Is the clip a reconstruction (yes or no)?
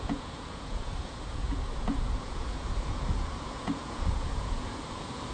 yes